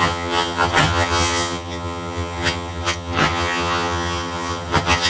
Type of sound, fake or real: fake